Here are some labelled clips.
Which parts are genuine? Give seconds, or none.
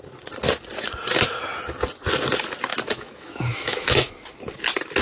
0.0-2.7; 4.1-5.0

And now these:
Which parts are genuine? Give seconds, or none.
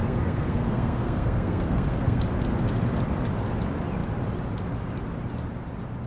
2.2-6.1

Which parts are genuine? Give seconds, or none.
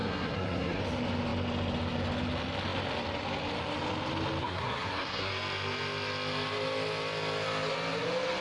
0.8-4.4; 5.3-8.4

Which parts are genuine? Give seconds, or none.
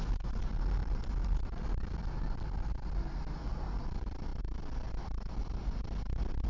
0.0-6.5